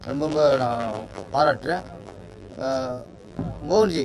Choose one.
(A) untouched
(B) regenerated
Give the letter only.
B